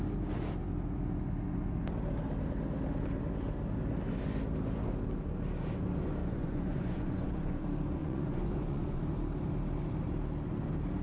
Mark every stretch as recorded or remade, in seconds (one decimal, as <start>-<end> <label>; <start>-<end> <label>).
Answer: 0.0-6.2 recorded; 6.2-7.6 remade; 7.6-8.0 recorded; 8.0-9.0 remade; 9.0-11.0 recorded